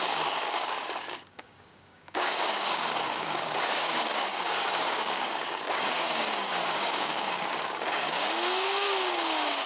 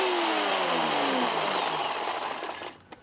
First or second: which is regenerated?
first